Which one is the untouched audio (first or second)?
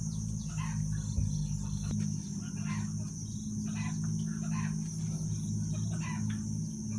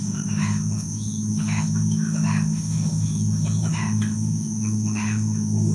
first